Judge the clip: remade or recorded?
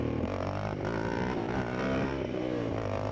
remade